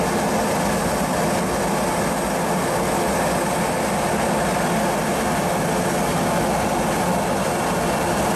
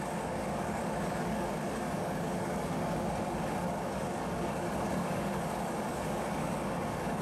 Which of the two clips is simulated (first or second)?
second